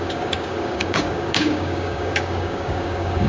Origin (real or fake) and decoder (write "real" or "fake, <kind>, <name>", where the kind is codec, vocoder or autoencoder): fake, codec, DAC